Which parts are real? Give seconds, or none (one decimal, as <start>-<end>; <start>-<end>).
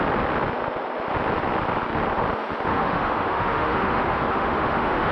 0.0-2.7